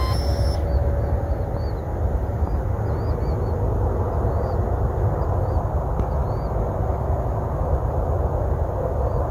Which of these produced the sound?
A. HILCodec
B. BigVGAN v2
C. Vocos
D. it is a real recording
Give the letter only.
D